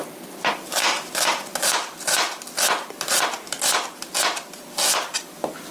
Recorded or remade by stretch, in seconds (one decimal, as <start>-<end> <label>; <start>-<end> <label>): 0.0-5.7 recorded